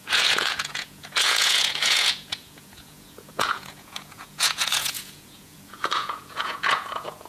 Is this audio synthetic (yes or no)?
yes